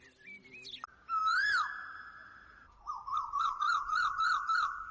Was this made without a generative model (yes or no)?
yes